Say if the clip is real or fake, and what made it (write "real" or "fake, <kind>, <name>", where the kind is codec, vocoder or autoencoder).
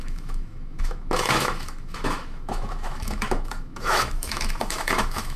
fake, autoencoder, DAC-VAE